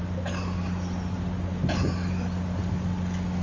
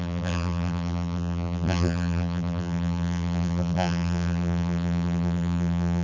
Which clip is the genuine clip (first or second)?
first